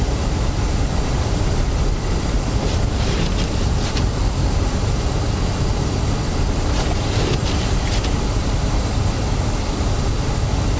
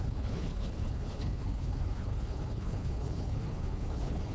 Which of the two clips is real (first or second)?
first